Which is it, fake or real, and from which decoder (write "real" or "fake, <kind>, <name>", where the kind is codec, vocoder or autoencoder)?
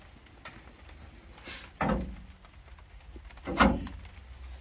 real